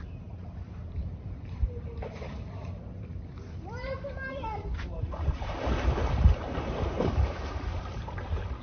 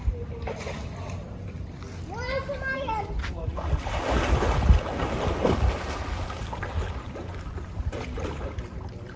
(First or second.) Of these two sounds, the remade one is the first